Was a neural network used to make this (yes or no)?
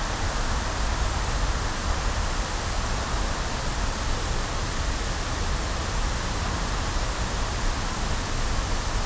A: no